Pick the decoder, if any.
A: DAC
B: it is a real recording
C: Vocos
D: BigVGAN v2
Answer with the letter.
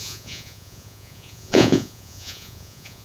C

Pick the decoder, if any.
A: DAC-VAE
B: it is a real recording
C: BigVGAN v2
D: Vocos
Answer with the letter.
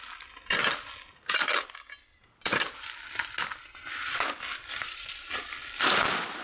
B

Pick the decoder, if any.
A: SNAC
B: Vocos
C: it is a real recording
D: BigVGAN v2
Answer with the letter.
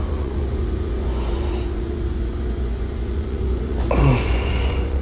B